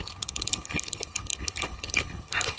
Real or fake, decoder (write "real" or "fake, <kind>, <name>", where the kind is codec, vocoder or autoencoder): fake, codec, HILCodec